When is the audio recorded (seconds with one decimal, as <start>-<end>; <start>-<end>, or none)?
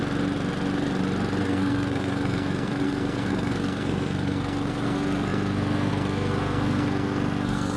0.0-1.4